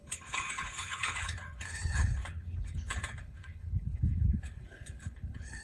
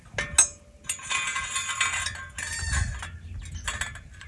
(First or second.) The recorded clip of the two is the second